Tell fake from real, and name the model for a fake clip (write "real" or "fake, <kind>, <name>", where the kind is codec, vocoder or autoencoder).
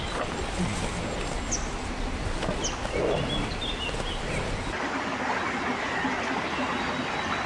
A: real